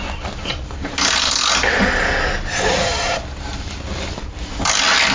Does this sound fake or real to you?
real